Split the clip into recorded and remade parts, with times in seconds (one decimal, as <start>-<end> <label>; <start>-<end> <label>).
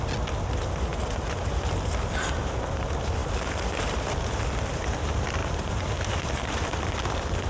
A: 0.0-0.9 remade; 0.9-1.5 recorded; 1.5-7.5 remade